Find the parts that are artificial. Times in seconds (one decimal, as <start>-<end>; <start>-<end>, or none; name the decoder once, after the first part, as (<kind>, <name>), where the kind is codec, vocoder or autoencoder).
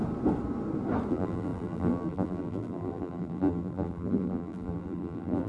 1.1-5.5 (vocoder, BigVGAN v2)